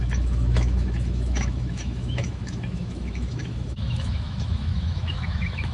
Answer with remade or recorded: remade